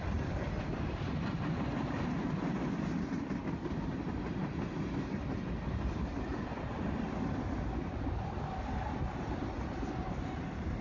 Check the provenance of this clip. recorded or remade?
recorded